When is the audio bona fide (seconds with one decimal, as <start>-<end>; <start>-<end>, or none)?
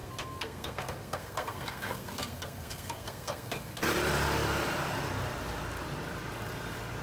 3.8-7.0